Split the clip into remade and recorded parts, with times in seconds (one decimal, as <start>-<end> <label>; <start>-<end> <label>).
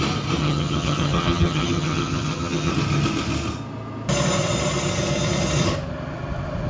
0.0-0.4 recorded; 0.4-2.7 remade; 2.7-6.7 recorded